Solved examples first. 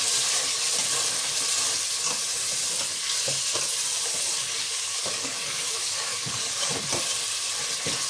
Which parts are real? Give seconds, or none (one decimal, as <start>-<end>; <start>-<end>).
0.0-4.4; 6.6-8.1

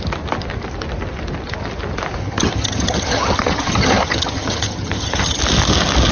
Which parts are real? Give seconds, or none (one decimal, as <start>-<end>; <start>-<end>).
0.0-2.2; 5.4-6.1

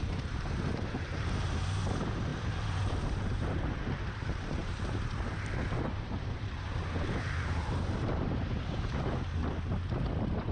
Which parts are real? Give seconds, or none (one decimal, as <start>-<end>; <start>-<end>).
9.4-10.5

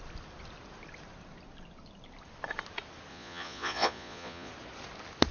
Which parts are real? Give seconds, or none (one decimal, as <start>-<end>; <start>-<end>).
0.0-3.1; 4.5-5.3